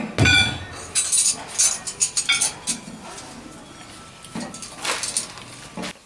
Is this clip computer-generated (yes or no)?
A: no